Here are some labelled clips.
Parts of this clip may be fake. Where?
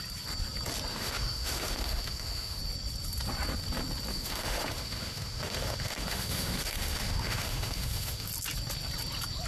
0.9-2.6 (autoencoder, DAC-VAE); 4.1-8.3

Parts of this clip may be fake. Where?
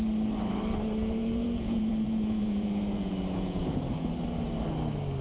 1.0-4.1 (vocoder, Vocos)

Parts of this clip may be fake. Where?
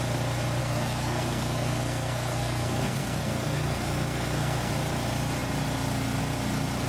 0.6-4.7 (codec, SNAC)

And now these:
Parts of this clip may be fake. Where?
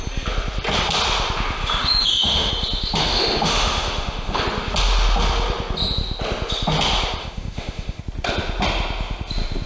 1.6-2.5 (autoencoder, DAC-VAE); 3.0-4.4; 7.2-8.0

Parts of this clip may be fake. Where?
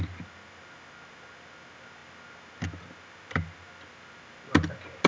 none